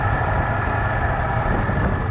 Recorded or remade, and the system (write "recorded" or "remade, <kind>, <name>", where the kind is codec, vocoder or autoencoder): recorded